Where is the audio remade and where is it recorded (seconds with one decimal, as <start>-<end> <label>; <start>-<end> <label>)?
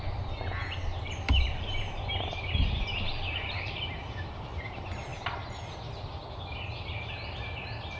0.0-0.9 recorded; 0.9-3.7 remade; 3.7-8.0 recorded